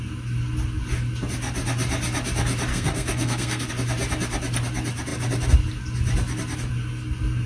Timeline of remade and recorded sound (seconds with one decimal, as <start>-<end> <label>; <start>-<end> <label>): 0.0-2.7 recorded; 2.7-3.7 remade; 3.7-7.5 recorded